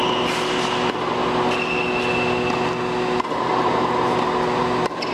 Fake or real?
real